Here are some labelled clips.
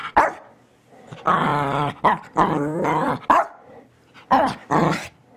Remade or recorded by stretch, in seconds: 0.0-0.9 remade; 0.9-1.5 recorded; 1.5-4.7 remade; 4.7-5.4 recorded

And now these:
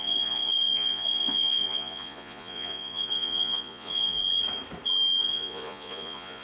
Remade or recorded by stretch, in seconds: 0.0-4.2 remade; 4.2-5.2 recorded; 5.2-6.4 remade

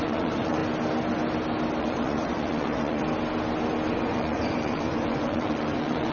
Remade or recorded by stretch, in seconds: 0.0-0.6 remade; 0.6-1.8 recorded; 1.8-3.0 remade; 3.0-3.9 recorded; 3.9-6.1 remade

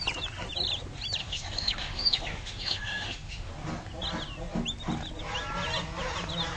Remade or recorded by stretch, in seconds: 0.0-1.2 recorded; 1.2-3.5 remade; 3.5-6.6 recorded

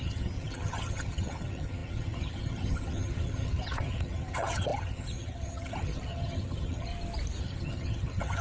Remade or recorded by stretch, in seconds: 0.0-6.9 remade; 6.9-7.4 recorded; 7.4-8.4 remade

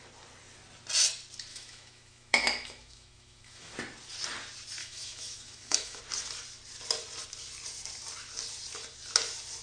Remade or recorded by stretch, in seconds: 0.0-1.5 recorded; 1.5-3.7 remade; 3.7-4.8 recorded; 4.8-6.0 remade; 6.0-9.6 recorded

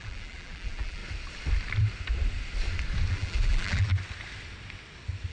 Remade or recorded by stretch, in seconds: 0.0-1.0 remade; 1.0-3.1 recorded; 3.1-3.9 remade; 3.9-5.3 recorded